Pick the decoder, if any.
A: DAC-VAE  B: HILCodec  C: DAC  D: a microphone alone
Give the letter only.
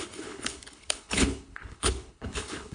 B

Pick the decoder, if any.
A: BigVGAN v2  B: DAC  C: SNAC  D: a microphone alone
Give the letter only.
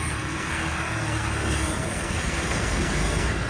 C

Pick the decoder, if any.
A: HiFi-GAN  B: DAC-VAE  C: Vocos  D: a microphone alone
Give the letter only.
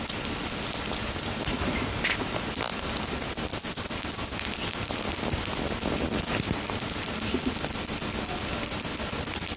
D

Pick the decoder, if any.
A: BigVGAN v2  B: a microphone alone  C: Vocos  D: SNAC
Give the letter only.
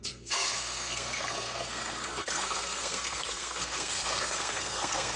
D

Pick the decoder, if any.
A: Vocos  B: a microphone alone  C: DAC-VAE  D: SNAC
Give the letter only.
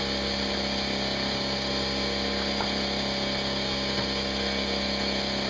B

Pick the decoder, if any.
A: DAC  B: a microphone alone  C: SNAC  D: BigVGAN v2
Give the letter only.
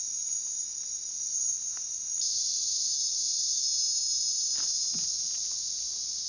B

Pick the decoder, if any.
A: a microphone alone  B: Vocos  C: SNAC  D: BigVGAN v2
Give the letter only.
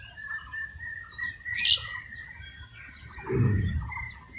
A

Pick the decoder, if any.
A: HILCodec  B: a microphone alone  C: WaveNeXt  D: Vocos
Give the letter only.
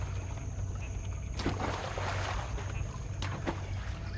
B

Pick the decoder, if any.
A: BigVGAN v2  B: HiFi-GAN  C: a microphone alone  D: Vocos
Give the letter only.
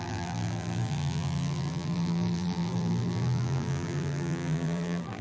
A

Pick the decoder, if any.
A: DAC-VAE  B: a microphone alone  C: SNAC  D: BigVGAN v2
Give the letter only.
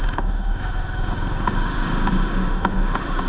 A